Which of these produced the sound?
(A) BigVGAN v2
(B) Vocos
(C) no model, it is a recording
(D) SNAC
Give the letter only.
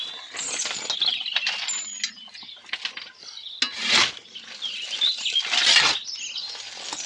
C